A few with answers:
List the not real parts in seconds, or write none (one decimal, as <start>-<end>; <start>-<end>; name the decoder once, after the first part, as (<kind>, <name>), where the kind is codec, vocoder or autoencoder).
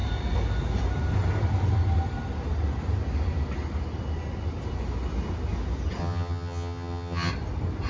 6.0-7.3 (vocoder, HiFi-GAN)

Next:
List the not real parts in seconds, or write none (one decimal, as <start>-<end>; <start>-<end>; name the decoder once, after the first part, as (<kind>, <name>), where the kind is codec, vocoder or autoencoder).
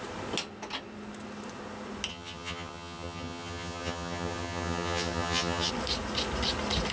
2.1-5.7 (vocoder, HiFi-GAN)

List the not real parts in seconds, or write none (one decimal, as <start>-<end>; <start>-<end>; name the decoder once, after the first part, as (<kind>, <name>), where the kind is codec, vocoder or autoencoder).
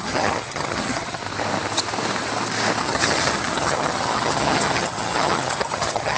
0.0-1.2 (vocoder, HiFi-GAN); 2.8-6.2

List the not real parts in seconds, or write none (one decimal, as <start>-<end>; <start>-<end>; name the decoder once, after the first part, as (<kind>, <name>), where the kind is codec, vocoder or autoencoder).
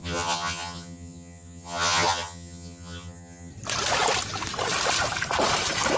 0.0-3.5 (vocoder, HiFi-GAN)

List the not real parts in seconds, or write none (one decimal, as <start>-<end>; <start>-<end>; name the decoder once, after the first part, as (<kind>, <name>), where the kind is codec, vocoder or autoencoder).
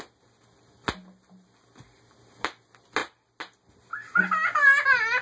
none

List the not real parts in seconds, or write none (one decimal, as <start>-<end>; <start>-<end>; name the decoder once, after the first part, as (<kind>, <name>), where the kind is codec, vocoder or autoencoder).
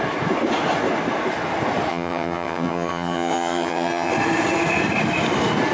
1.9-4.1 (vocoder, HiFi-GAN)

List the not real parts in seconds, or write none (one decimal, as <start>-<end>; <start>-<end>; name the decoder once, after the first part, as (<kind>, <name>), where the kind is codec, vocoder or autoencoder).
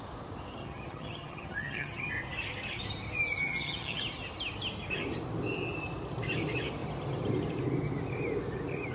0.6-2.1 (vocoder, HiFi-GAN); 3.4-4.0